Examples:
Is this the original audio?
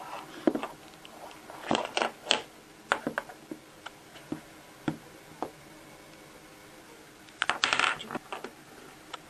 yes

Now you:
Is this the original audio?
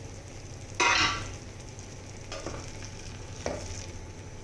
yes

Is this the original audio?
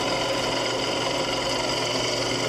yes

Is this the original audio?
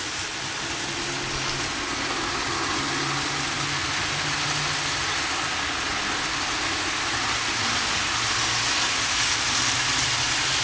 yes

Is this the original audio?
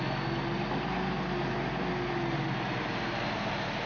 yes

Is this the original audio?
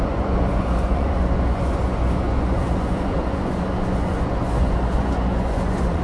no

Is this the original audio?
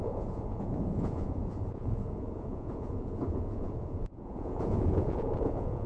no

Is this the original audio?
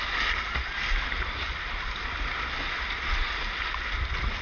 yes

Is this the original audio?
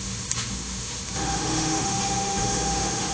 no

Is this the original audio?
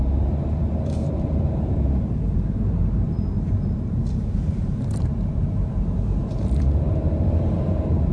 no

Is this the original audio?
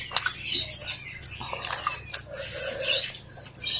yes